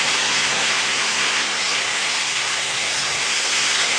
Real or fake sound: fake